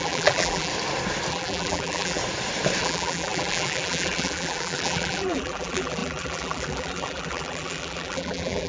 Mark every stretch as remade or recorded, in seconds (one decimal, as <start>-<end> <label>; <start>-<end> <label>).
0.0-0.7 remade; 0.7-1.3 recorded; 1.3-2.2 remade; 2.2-2.8 recorded; 2.8-8.7 remade

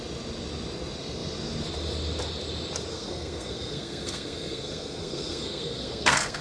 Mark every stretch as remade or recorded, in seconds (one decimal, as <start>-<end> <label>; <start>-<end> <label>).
0.0-2.9 recorded; 2.9-6.4 remade

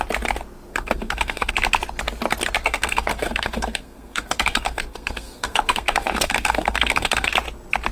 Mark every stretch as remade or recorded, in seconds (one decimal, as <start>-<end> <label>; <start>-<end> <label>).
0.0-0.7 recorded; 0.7-1.5 remade; 1.5-2.6 recorded; 2.6-7.3 remade; 7.3-7.9 recorded